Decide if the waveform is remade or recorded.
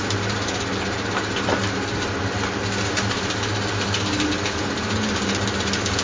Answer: recorded